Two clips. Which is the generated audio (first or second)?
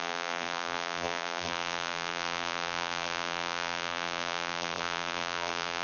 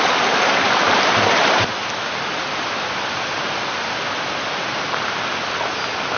first